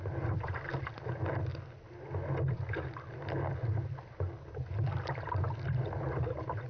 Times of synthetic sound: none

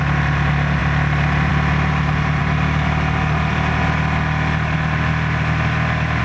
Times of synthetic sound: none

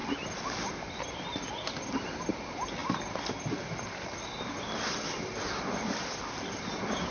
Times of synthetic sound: 0.0-0.7; 2.8-5.6

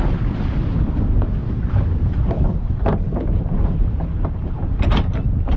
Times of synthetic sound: 1.4-4.8

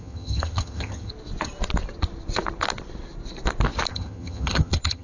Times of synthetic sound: 0.0-1.1; 3.9-5.0